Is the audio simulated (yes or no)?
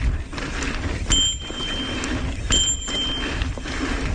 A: no